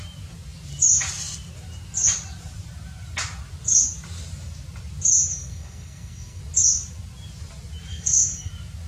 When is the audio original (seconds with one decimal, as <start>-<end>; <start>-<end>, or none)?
0.0-5.3; 6.4-7.9; 8.5-8.9